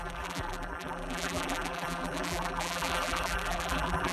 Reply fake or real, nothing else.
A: fake